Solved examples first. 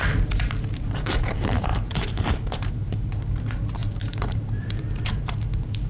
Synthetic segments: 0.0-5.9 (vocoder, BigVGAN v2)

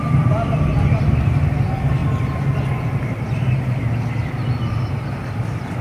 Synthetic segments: none

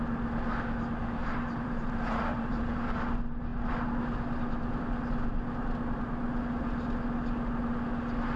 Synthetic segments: 1.2-2.6 (vocoder, BigVGAN v2)

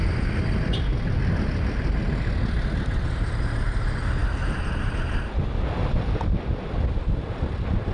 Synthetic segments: 0.9-2.2 (vocoder, BigVGAN v2)

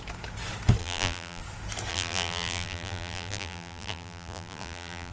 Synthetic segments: 0.8-1.4 (vocoder, BigVGAN v2); 1.9-5.1

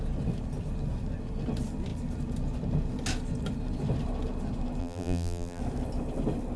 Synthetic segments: 4.8-5.6 (vocoder, BigVGAN v2)

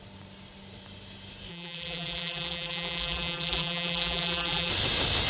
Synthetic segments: 1.5-4.7 (vocoder, BigVGAN v2)

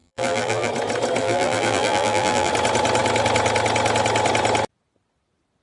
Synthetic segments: 0.0-0.7 (vocoder, BigVGAN v2); 1.2-2.5